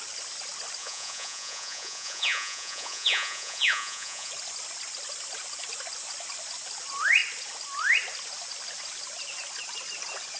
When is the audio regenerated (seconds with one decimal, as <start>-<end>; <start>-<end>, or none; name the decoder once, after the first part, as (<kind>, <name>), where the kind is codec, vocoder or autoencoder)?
0.8-4.3 (vocoder, Vocos)